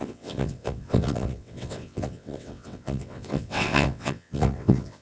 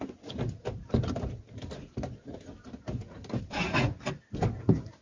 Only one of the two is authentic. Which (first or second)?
second